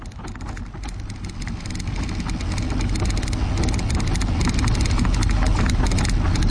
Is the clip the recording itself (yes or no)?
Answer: yes